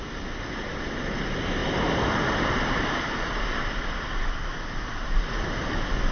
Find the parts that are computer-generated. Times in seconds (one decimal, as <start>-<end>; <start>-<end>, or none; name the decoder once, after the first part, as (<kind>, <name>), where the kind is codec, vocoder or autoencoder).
none